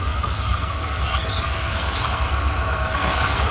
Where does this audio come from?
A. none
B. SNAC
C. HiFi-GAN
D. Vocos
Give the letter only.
B